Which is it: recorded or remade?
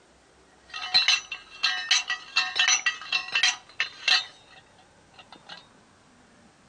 recorded